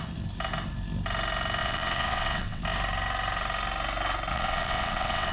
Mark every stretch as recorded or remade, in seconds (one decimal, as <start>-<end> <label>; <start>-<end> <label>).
0.0-1.6 recorded; 1.6-2.6 remade; 2.6-4.3 recorded; 4.3-5.3 remade